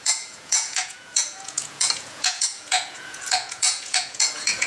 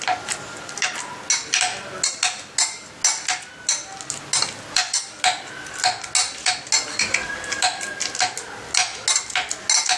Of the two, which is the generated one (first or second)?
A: first